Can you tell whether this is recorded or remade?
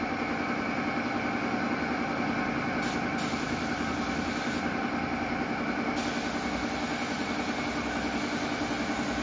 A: recorded